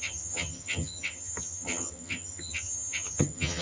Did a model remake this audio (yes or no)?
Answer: yes